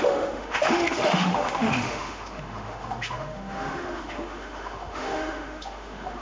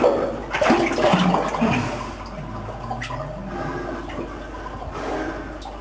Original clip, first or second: second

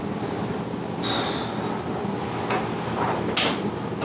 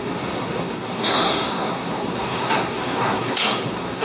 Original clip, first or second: first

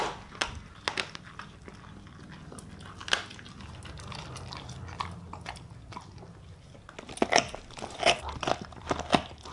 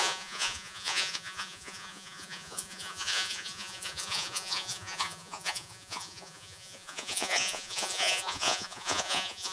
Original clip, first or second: first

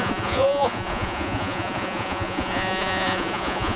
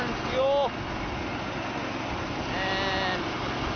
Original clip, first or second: second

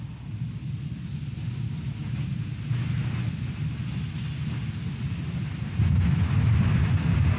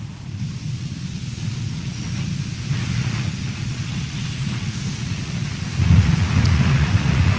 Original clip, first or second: first